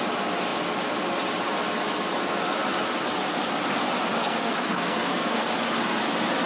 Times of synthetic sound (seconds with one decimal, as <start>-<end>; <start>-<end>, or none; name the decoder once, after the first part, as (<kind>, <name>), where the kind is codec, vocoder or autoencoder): 4.2-5.5 (codec, SNAC)